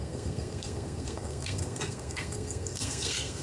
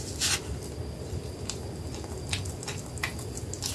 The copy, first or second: first